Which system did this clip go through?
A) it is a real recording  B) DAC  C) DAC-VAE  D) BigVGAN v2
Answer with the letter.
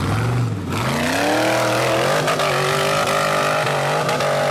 A